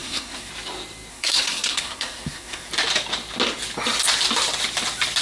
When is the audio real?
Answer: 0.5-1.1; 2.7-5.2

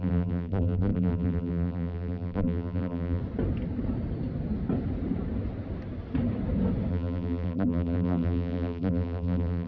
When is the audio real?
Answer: 3.2-6.9

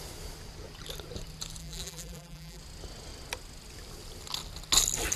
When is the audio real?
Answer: 0.0-1.6; 2.6-5.2

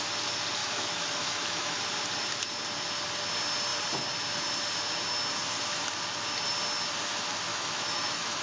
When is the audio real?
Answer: 0.0-0.6; 1.8-7.5

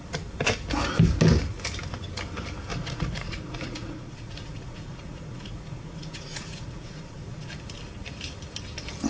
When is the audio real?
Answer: 0.0-2.7; 7.5-9.1

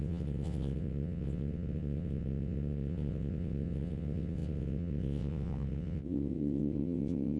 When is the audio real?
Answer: none